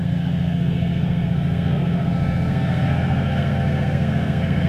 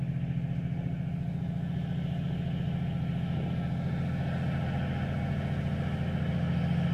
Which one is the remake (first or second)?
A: first